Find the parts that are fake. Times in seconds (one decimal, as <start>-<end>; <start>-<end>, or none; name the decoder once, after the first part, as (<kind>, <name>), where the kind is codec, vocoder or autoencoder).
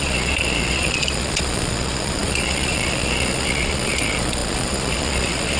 0.0-5.6 (vocoder, Vocos)